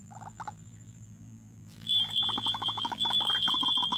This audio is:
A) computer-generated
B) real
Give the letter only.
A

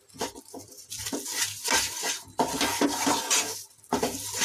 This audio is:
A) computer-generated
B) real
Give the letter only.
B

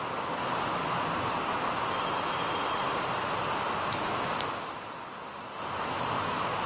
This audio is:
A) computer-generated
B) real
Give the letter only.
B